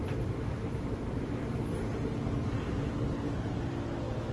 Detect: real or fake real